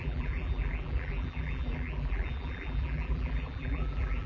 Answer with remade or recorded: remade